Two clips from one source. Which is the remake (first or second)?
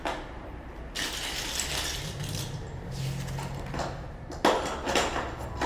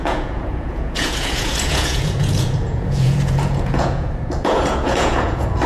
second